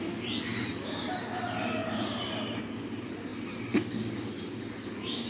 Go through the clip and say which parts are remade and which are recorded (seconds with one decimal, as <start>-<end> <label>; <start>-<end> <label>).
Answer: 0.0-5.3 recorded